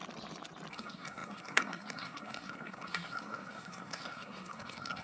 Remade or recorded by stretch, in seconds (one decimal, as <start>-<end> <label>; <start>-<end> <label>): 0.0-0.7 recorded; 0.7-5.0 remade